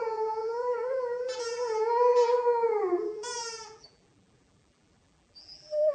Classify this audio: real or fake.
fake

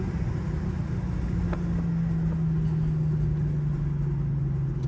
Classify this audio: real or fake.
real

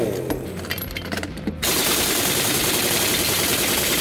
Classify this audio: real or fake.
fake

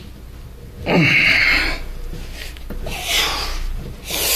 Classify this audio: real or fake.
real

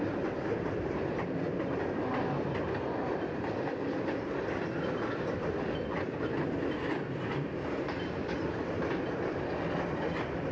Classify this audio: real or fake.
real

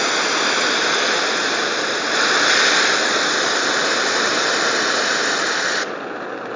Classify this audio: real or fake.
fake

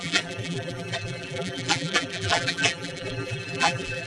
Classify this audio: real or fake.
fake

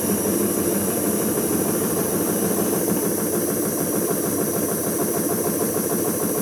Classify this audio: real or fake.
fake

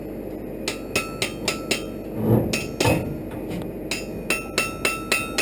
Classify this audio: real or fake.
real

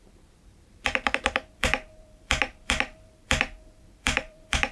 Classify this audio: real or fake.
fake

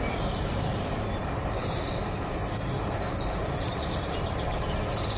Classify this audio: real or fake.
fake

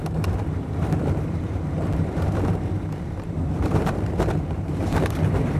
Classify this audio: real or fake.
fake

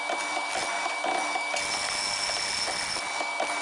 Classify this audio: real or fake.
real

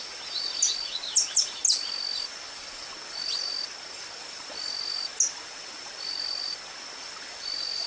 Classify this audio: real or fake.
real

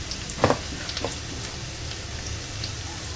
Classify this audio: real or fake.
real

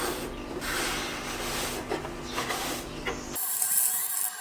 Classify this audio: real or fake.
real